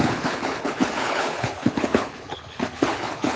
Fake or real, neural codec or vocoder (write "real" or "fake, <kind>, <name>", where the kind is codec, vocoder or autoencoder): fake, codec, HILCodec